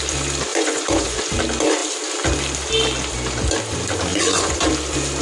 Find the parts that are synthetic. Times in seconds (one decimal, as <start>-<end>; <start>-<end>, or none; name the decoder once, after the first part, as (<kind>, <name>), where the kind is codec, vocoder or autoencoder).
0.5-1.2 (vocoder, Vocos); 4.1-4.6